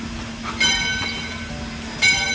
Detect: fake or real real